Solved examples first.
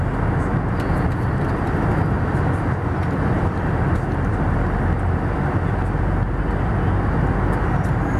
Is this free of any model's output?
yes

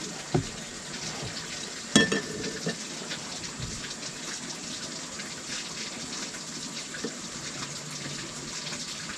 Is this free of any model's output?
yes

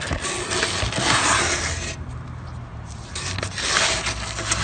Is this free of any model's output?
yes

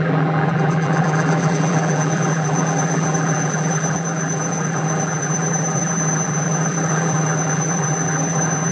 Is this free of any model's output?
no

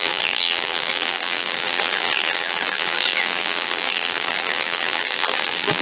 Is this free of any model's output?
no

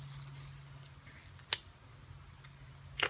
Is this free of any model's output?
yes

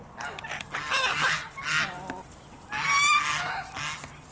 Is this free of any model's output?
yes